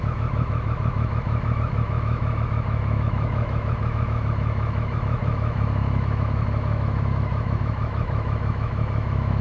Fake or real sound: fake